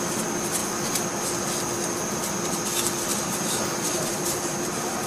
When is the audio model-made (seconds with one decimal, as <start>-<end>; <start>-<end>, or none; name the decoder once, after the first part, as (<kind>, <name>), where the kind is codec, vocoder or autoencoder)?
3.1-5.1 (vocoder, BigVGAN v2)